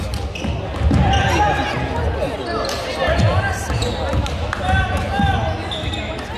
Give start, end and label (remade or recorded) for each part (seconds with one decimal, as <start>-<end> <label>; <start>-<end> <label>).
0.0-6.4 recorded